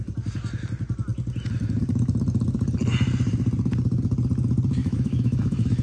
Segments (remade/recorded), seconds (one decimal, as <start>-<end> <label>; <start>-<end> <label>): 0.0-4.8 recorded; 4.8-5.8 remade